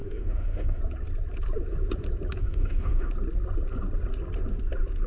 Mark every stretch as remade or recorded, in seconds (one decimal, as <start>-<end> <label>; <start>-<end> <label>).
0.0-0.8 remade; 0.8-2.4 recorded; 2.4-3.1 remade; 3.1-5.1 recorded